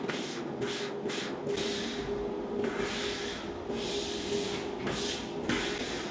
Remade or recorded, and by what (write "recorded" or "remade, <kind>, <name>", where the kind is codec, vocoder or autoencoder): recorded